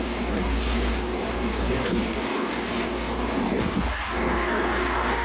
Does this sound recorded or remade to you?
remade